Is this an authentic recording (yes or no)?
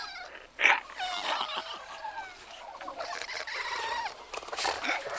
yes